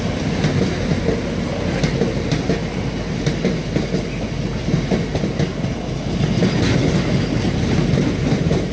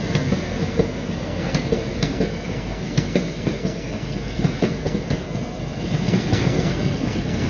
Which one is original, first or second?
first